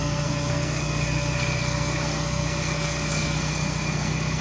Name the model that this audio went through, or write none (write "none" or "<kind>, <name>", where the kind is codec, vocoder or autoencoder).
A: codec, SNAC